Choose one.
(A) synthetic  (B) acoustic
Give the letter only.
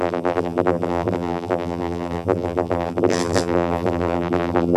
A